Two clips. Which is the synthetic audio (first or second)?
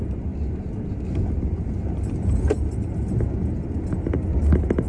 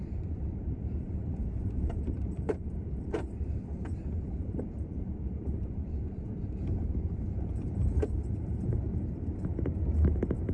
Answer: second